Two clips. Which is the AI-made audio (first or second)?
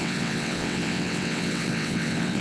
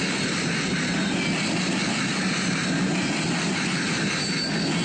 first